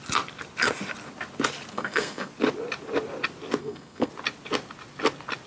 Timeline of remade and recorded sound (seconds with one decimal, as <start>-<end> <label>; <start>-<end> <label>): 0.0-1.7 recorded; 1.7-2.3 remade; 2.3-3.6 recorded; 3.6-4.1 remade; 4.1-5.5 recorded